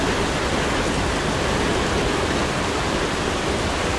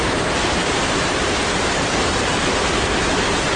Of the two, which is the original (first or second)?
first